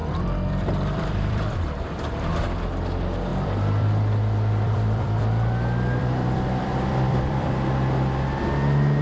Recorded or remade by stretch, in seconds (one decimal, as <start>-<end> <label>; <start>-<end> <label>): 0.0-2.3 remade; 2.3-3.3 recorded; 3.3-5.2 remade; 5.2-6.0 recorded; 6.0-7.5 remade; 7.5-9.0 recorded